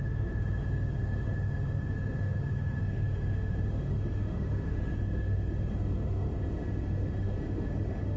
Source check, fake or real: fake